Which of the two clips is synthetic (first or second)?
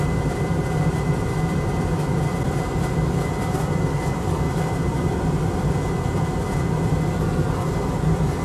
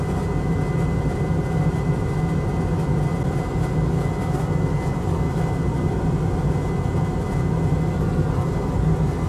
first